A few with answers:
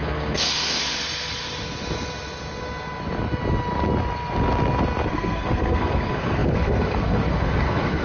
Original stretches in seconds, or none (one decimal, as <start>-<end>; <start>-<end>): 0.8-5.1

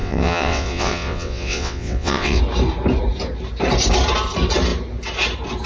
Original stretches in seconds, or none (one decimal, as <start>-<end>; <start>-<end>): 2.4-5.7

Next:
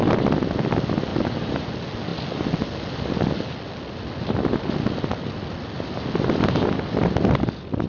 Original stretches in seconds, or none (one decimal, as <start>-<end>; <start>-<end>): 0.0-1.1; 1.7-7.9

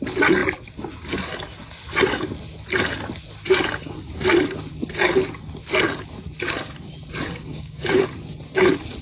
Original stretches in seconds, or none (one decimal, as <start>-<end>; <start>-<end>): 0.0-7.4; 8.0-9.0